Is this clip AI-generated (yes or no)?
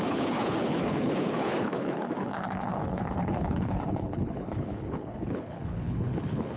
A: yes